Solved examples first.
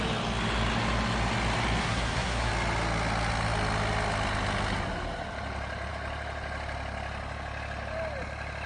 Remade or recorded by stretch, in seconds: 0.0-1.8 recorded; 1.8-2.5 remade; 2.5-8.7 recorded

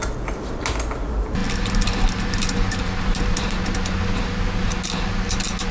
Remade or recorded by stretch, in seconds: 0.0-5.7 recorded

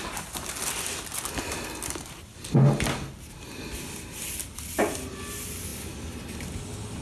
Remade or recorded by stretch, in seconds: 0.0-7.0 recorded

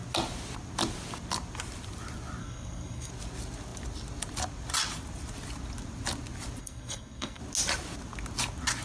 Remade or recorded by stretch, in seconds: 0.0-2.4 recorded; 2.4-3.1 remade; 3.1-6.6 recorded; 6.6-7.4 remade; 7.4-8.8 recorded

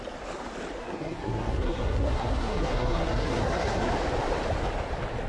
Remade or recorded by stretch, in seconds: 0.0-0.8 recorded; 0.8-3.9 remade; 3.9-5.3 recorded

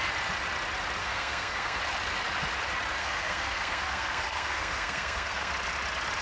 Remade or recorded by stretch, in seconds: 0.0-1.0 recorded; 1.0-1.8 remade; 1.8-3.0 recorded; 3.0-5.5 remade; 5.5-6.2 recorded

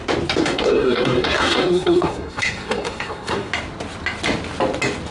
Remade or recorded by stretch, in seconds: 0.0-0.4 recorded; 0.4-3.5 remade; 3.5-5.1 recorded

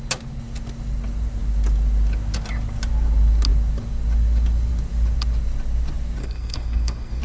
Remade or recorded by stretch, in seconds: 0.0-6.2 recorded; 6.2-7.2 remade